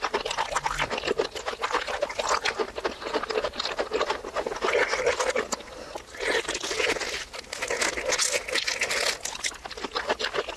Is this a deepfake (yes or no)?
no